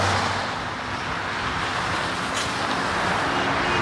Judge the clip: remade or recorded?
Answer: recorded